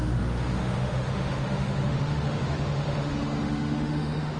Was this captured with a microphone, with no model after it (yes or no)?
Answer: no